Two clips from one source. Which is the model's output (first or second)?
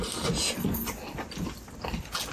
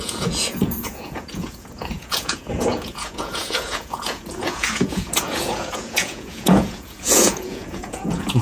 second